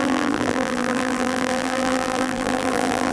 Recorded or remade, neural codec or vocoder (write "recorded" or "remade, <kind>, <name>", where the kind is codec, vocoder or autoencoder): remade, vocoder, BigVGAN v2